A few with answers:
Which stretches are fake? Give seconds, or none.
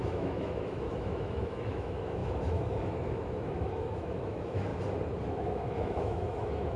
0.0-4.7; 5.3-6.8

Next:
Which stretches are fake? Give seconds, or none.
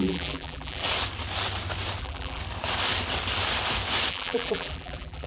0.0-0.8; 2.0-2.4; 4.1-5.3